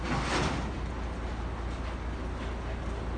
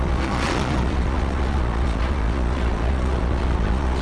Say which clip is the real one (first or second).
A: first